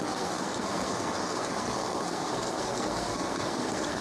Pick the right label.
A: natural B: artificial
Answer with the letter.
B